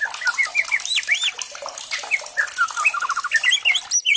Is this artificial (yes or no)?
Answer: no